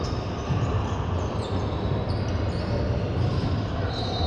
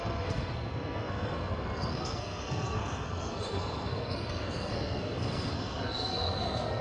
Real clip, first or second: first